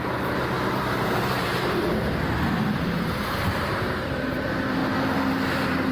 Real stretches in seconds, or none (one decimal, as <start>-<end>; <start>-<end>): 4.8-5.9